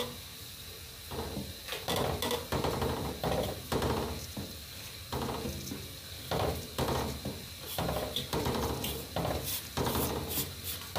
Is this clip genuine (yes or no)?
yes